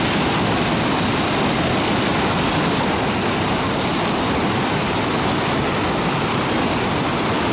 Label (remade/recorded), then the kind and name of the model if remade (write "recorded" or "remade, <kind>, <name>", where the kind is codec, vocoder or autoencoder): recorded